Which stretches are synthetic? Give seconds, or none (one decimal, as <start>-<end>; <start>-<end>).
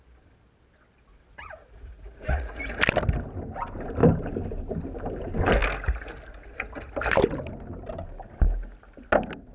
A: 1.1-2.6